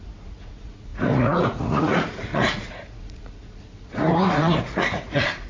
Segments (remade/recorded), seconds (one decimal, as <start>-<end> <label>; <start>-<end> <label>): 0.0-5.5 remade